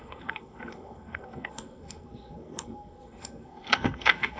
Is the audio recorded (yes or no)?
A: no